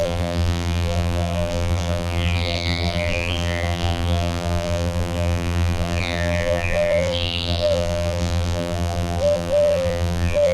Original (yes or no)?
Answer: no